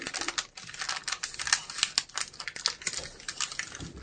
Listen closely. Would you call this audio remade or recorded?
recorded